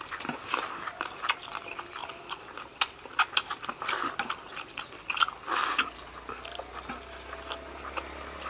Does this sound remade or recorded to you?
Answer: recorded